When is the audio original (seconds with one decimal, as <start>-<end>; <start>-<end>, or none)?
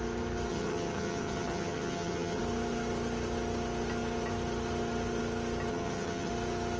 0.0-0.5; 2.4-5.7; 6.3-6.8